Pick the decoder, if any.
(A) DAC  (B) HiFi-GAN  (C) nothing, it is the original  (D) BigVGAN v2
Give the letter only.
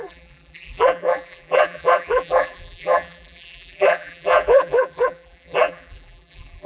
D